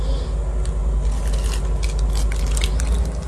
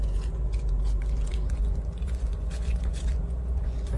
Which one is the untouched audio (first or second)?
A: first